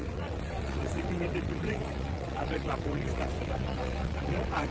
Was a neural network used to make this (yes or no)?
yes